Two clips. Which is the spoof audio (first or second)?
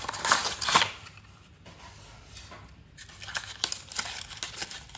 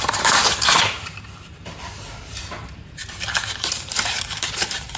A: second